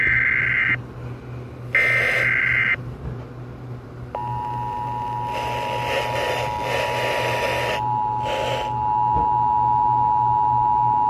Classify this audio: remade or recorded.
recorded